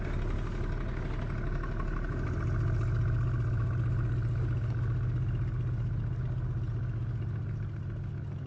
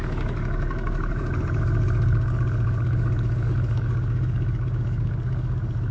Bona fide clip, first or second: first